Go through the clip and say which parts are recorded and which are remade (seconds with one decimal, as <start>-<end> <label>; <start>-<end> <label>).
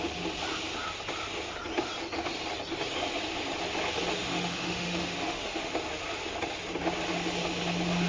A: 0.0-4.1 recorded; 4.1-5.7 remade; 5.7-8.1 recorded